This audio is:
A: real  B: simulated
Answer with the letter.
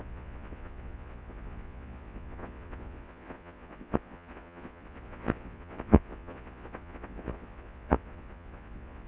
B